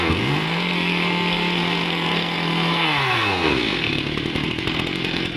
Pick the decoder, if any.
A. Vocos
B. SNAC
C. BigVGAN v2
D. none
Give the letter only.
B